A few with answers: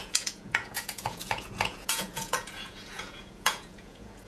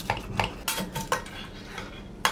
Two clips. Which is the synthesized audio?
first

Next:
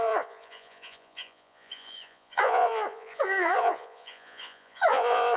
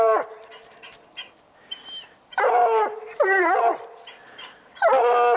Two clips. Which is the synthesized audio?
first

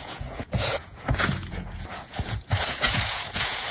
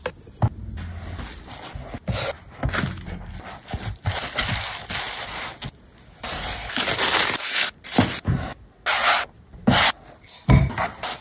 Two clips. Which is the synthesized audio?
first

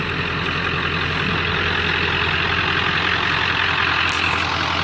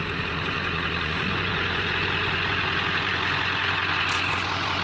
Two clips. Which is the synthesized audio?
second